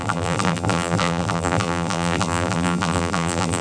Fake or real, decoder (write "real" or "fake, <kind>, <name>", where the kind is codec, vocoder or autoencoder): fake, vocoder, BigVGAN v2